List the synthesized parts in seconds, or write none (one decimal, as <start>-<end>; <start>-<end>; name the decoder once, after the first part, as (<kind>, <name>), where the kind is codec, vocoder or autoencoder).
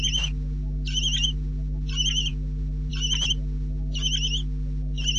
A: none